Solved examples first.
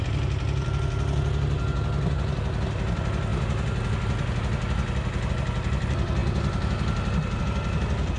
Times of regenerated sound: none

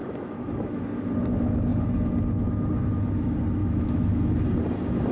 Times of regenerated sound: 0.0-0.8 (autoencoder, DAC-VAE); 3.6-4.2

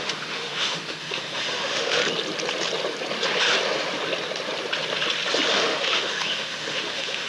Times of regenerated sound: 0.0-2.0 (autoencoder, DAC-VAE); 5.5-7.3